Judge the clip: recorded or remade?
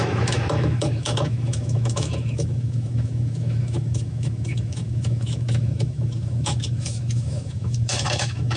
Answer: remade